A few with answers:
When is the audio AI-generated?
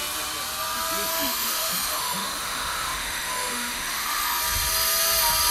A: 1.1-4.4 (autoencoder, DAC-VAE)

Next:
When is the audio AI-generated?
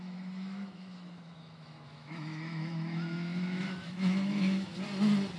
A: 0.0-4.7 (autoencoder, DAC-VAE)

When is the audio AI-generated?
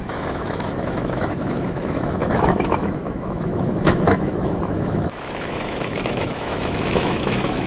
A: 0.0-7.7 (autoencoder, DAC-VAE)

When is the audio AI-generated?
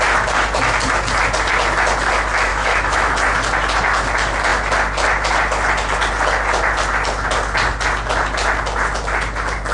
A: 2.5-3.1 (autoencoder, DAC-VAE)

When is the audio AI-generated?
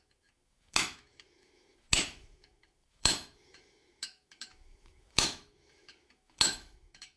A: 0.0-7.2 (autoencoder, DAC-VAE)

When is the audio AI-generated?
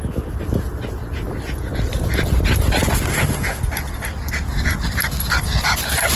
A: 3.1-3.6 (autoencoder, DAC-VAE)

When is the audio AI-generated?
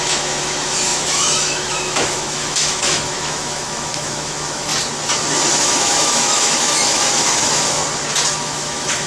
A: 0.0-4.7 (autoencoder, DAC-VAE); 5.6-7.8; 8.4-9.1